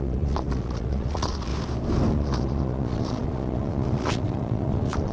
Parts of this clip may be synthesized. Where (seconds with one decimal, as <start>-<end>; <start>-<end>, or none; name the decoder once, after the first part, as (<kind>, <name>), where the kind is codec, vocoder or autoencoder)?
0.0-1.5 (vocoder, Vocos); 2.1-5.1

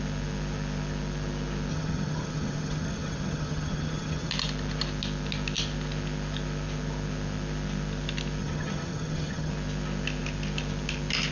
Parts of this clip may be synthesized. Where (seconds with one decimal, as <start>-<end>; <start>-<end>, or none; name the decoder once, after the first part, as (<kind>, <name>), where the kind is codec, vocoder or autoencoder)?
1.7-4.3 (vocoder, HiFi-GAN); 8.4-9.5

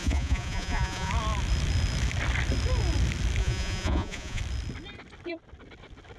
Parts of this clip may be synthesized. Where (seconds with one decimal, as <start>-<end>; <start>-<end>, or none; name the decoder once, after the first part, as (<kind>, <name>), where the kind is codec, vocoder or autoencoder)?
0.0-1.1 (vocoder, Vocos); 3.4-4.4

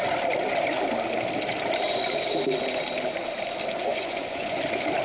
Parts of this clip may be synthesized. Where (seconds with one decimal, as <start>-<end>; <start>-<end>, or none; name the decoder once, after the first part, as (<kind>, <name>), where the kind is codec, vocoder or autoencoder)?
3.8-4.6 (vocoder, Vocos)

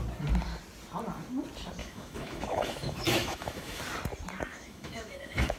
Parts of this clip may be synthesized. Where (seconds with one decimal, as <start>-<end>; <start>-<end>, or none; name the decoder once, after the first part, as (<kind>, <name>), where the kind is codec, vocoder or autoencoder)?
1.8-3.8 (autoencoder, DAC-VAE); 4.5-5.6

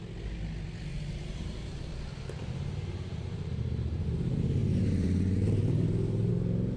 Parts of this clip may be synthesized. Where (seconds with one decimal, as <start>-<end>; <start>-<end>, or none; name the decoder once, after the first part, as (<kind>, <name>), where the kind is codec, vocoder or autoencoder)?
0.9-1.9 (vocoder, BigVGAN v2); 3.1-4.0; 4.6-6.3

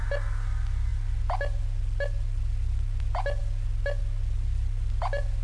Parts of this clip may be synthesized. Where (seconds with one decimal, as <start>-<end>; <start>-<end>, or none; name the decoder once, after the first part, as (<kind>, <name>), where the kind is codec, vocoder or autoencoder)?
none

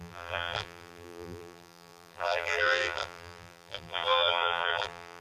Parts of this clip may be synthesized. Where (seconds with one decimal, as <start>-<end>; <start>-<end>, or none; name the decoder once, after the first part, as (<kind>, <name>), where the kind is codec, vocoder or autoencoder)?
0.0-5.2 (vocoder, BigVGAN v2)